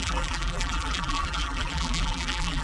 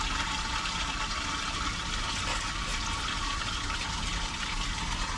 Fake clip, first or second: first